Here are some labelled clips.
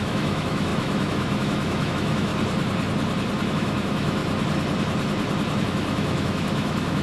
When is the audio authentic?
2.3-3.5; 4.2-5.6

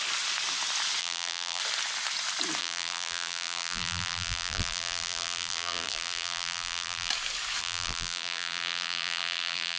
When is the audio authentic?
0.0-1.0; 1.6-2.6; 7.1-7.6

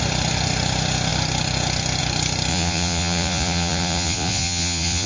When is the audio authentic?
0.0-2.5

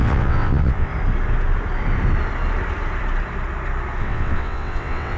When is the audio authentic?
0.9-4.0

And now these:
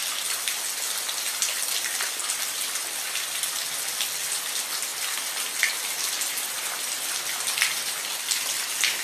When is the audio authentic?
0.0-9.0